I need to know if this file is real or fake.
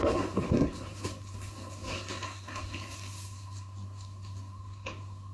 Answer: fake